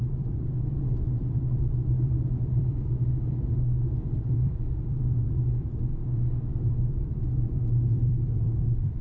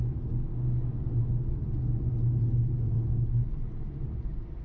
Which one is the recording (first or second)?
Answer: second